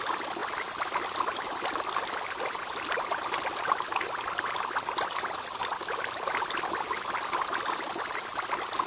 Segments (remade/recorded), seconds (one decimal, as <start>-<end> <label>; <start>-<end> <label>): 0.0-8.9 recorded